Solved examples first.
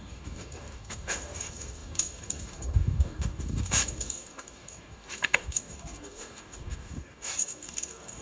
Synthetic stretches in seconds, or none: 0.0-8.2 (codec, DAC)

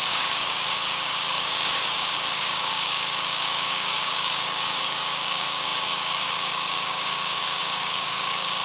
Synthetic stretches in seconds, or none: 0.0-8.6 (codec, DAC)